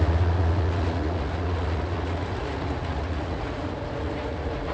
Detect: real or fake fake